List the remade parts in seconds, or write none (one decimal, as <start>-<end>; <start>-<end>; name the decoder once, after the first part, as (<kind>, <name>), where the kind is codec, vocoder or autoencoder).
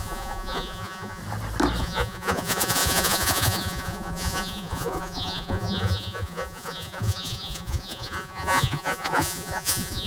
0.0-1.2 (vocoder, Vocos); 1.8-10.1